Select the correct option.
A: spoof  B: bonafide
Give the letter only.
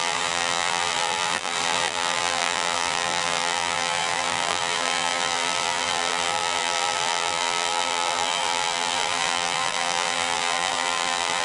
A